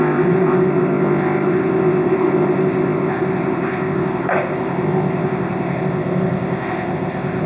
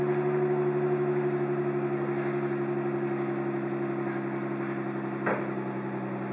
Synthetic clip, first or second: first